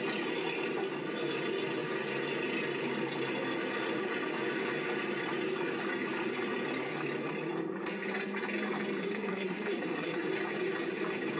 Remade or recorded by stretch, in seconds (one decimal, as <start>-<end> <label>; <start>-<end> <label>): 0.0-9.0 recorded; 9.0-10.3 remade; 10.3-11.4 recorded